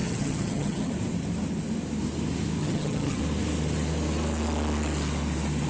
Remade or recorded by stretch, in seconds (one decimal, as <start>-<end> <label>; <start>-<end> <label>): 0.0-0.9 remade; 0.9-2.6 recorded; 2.6-3.2 remade; 3.2-5.7 recorded